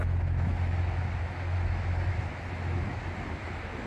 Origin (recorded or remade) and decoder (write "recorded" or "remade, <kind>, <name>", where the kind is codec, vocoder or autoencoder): remade, autoencoder, DAC-VAE